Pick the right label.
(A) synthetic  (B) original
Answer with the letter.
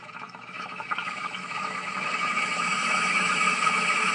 A